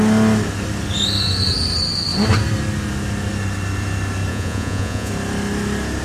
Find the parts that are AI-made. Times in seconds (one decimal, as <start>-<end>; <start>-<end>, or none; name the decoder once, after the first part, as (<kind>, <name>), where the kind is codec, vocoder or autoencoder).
4.3-5.1 (vocoder, Vocos)